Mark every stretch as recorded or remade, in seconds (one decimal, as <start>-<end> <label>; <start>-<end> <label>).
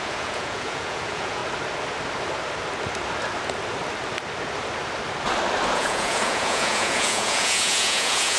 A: 0.0-1.4 remade; 1.4-5.7 recorded; 5.7-8.4 remade